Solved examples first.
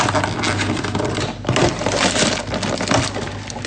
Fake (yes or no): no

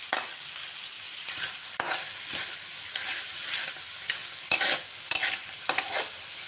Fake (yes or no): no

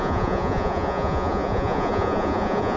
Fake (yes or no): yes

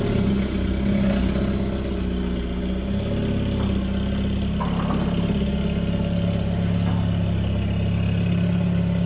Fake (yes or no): no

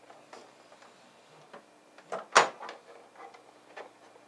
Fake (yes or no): no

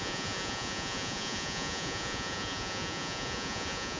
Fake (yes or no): yes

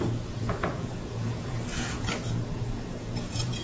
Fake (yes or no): yes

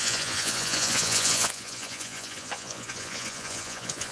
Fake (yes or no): yes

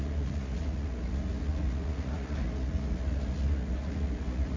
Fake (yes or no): yes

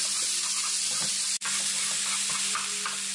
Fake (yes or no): no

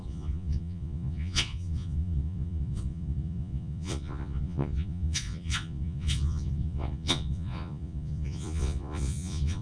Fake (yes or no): yes